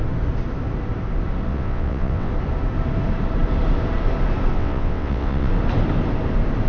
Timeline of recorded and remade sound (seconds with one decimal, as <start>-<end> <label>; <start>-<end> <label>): 0.0-1.5 recorded; 1.5-2.3 remade; 2.3-4.5 recorded; 4.5-5.5 remade; 5.5-6.7 recorded